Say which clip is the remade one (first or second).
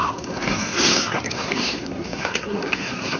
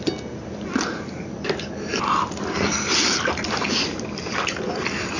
first